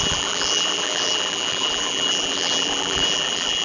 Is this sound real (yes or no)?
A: no